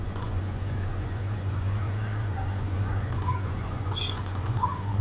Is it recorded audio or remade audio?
remade